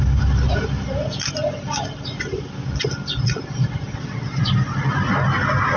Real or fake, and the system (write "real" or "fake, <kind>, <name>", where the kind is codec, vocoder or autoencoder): real